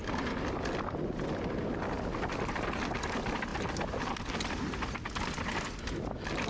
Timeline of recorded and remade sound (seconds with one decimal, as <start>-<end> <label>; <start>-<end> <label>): 0.0-6.5 recorded